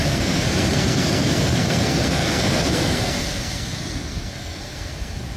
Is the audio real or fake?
fake